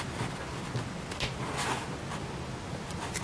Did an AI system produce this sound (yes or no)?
no